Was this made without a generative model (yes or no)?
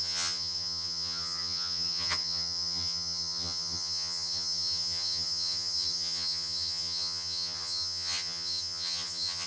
no